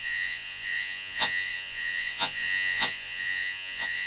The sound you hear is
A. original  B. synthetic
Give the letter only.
B